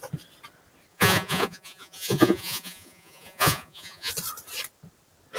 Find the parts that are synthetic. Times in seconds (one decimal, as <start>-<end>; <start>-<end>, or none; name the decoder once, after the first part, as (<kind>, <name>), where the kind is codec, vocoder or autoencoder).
0.9-4.1 (vocoder, Vocos)